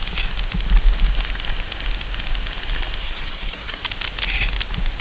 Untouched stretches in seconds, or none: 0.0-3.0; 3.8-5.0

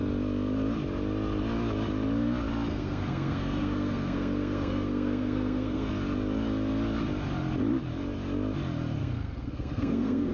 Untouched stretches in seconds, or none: 0.0-2.7; 5.9-9.0

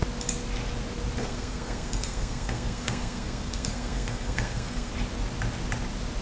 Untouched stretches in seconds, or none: 0.0-1.2; 4.9-6.2

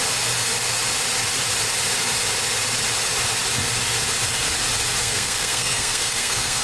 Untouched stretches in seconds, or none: 0.0-5.0

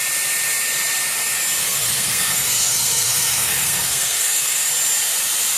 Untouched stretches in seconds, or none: 0.0-1.6; 4.7-5.6